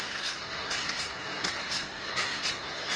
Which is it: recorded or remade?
remade